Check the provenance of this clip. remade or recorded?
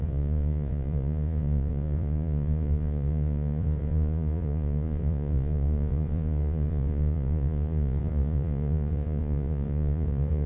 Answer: remade